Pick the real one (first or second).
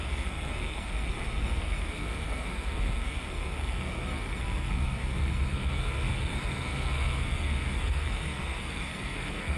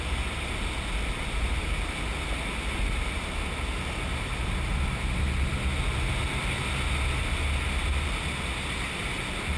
second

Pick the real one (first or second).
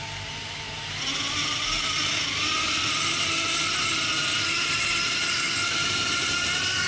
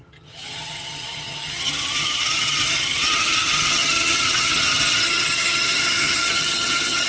first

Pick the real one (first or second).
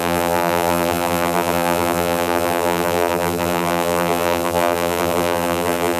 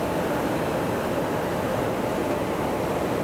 second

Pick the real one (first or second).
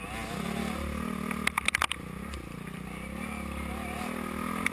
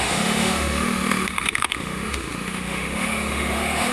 first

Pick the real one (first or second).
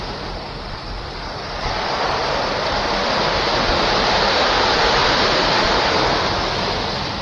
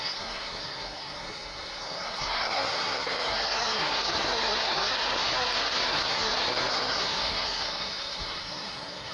first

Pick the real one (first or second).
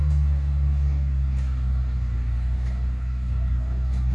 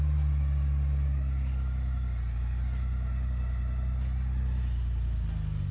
second